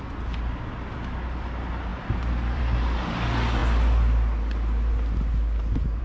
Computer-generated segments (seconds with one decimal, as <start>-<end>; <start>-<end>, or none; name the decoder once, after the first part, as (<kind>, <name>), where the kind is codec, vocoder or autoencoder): 1.9-2.6 (vocoder, BigVGAN v2)